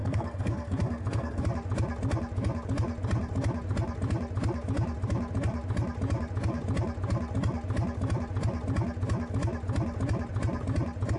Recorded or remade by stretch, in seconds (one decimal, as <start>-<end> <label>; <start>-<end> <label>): 0.0-1.4 remade; 1.4-11.2 recorded